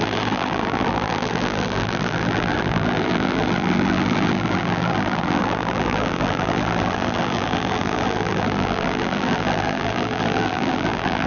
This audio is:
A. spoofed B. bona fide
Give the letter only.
A